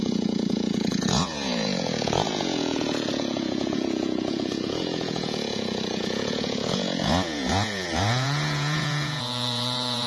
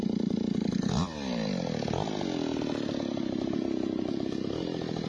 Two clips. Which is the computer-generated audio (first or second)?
first